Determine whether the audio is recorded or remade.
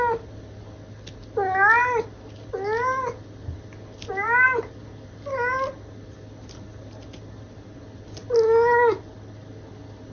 recorded